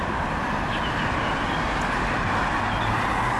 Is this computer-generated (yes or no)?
no